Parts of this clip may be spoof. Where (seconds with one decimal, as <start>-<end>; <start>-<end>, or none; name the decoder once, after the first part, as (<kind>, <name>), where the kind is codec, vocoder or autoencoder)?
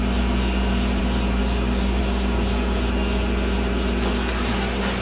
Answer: 1.4-2.0 (codec, DAC)